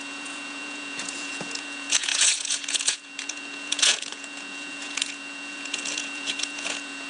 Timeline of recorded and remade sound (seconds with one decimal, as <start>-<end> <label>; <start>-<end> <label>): 0.0-7.1 remade

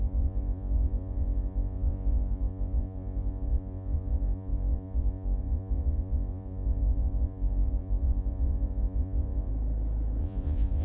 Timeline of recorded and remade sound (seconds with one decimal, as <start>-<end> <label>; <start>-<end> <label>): 0.0-9.5 remade; 9.5-10.2 recorded; 10.2-10.8 remade

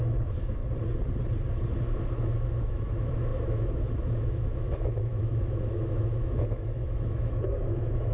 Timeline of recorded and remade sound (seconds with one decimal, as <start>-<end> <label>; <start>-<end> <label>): 0.0-0.6 remade; 0.6-2.1 recorded; 2.1-8.1 remade

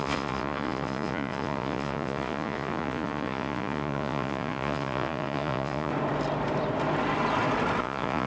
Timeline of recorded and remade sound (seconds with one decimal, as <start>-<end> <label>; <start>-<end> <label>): 0.0-5.9 remade; 5.9-7.8 recorded; 7.8-8.3 remade

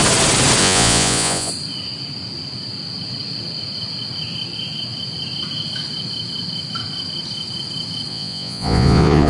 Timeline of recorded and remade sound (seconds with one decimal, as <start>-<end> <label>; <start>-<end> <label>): 0.0-0.6 recorded; 0.6-1.5 remade; 1.5-8.1 recorded; 8.1-9.3 remade